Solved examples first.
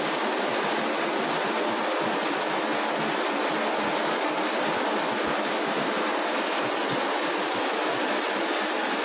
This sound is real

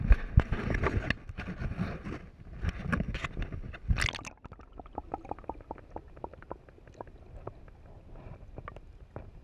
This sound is real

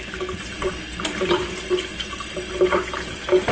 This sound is real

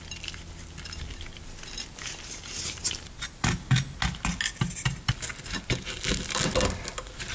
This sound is real